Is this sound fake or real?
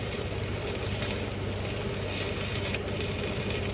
real